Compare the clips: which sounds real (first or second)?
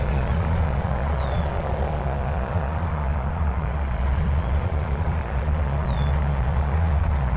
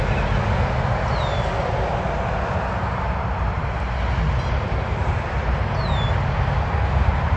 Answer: second